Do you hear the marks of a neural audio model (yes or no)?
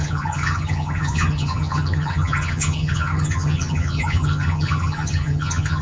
yes